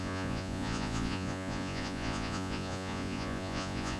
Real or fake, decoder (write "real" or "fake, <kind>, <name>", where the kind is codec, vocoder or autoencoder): fake, vocoder, Vocos